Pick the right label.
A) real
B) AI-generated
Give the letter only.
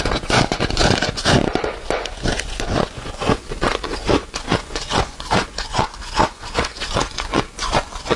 B